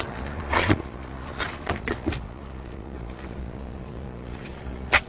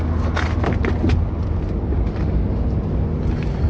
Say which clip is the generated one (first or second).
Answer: first